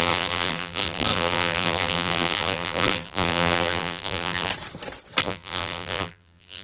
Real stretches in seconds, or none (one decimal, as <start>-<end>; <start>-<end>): 4.5-5.2